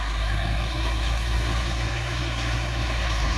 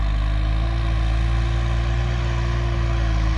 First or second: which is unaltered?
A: second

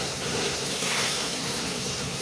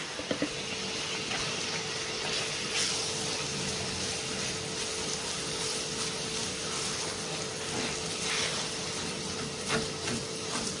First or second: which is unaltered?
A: second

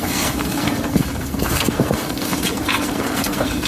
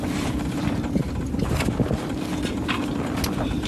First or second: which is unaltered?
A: second